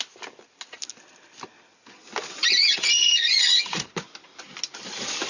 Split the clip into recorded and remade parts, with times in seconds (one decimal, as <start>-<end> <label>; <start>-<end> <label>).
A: 0.0-2.7 recorded; 2.7-3.9 remade; 3.9-5.3 recorded